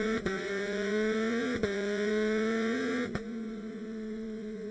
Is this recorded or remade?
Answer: remade